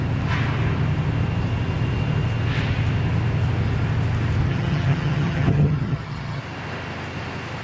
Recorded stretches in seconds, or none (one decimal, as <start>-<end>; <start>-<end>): 0.0-4.5; 6.4-7.6